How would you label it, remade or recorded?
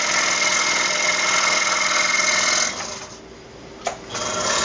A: recorded